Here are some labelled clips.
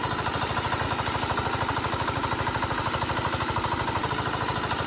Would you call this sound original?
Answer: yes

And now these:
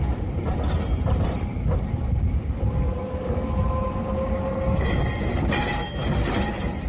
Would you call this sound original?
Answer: yes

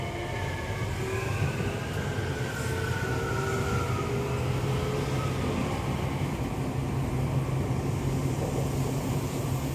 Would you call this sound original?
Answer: yes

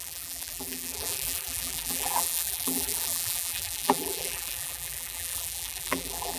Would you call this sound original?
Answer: no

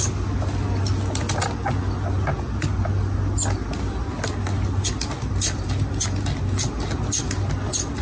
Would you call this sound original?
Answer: yes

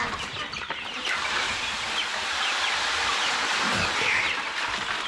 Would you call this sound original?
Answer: yes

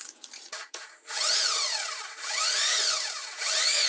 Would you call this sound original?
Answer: no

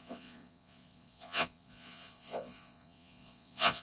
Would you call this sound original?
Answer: no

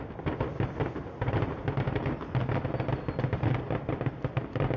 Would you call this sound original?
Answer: yes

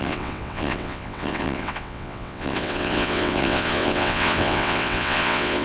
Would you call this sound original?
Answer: no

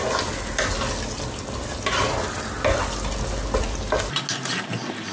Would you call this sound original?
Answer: yes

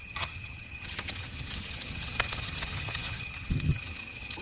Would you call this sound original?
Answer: no